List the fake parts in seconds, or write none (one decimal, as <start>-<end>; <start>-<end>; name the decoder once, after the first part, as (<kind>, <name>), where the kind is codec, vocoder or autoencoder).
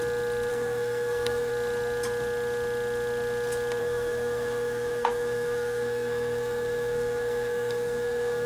0.5-1.5 (codec, SNAC); 3.8-8.5